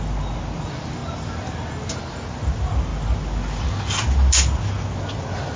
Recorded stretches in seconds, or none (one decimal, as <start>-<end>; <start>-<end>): 0.0-5.6